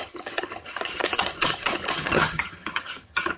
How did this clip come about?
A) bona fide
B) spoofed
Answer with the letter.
B